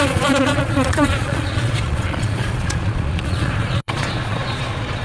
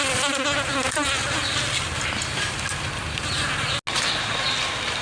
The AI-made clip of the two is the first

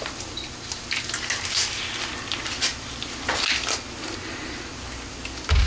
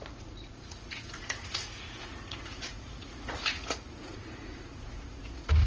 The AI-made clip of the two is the second